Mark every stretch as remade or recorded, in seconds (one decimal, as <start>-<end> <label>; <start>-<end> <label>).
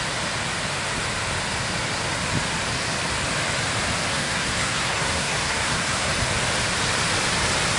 0.0-4.1 recorded; 4.1-6.1 remade; 6.1-7.8 recorded